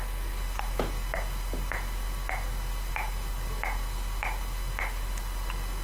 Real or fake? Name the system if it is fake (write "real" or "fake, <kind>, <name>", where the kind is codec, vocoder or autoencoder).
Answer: real